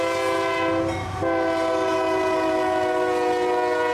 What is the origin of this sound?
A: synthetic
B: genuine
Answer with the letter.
B